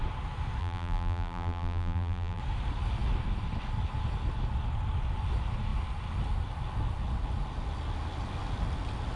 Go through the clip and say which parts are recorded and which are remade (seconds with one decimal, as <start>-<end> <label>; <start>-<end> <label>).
0.0-0.6 recorded; 0.6-2.4 remade; 2.4-9.2 recorded